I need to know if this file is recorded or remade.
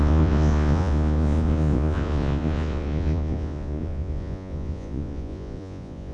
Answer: remade